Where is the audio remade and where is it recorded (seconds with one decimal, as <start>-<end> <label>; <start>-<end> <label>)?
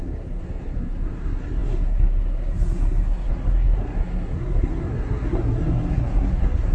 0.0-6.7 remade